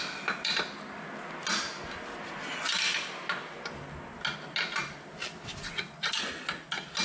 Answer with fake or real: real